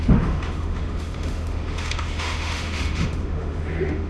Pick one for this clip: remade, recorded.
remade